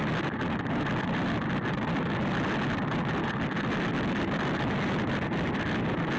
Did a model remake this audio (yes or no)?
no